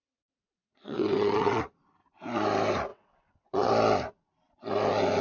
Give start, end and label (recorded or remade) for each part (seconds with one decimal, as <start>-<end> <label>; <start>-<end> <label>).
0.0-1.6 remade; 1.6-2.9 recorded; 2.9-3.7 remade; 3.7-5.2 recorded